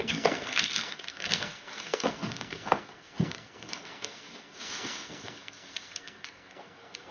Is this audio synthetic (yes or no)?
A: yes